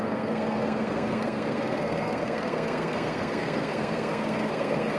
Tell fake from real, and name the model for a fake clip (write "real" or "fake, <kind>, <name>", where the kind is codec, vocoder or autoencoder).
fake, codec, SNAC